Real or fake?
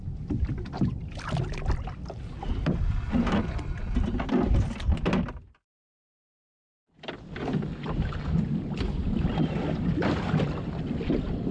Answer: real